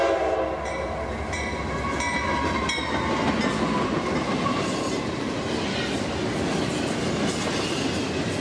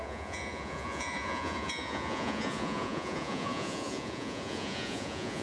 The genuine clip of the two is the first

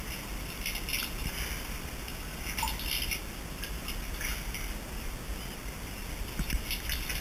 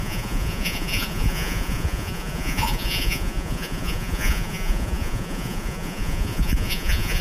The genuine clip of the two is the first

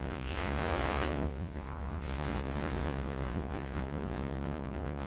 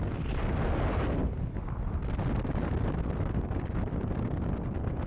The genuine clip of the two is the second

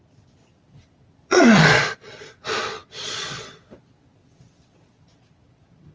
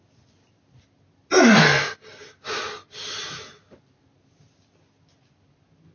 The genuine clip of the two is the second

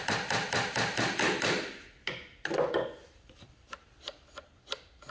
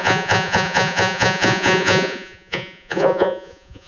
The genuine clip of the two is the first